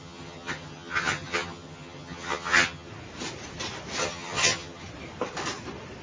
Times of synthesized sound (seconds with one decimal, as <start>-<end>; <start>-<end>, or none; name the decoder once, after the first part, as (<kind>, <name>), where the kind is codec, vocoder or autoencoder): 0.0-2.9 (vocoder, HiFi-GAN); 4.0-4.8